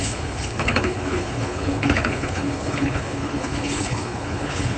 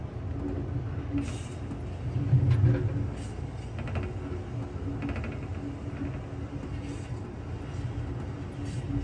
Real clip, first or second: second